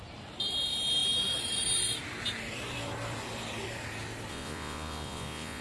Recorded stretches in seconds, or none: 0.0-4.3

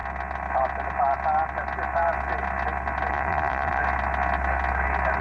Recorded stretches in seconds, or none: 0.0-3.1; 3.8-5.2

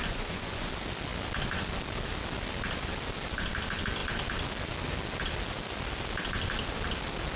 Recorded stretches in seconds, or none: 0.7-7.4